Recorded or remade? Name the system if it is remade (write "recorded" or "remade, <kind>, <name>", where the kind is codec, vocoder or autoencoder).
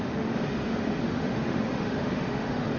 remade, autoencoder, DAC-VAE